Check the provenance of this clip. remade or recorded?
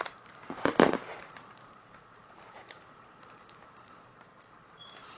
remade